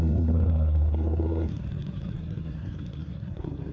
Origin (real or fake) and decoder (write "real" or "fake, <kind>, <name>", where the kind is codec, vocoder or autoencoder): fake, codec, SNAC